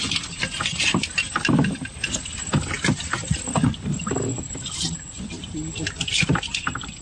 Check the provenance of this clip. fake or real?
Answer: real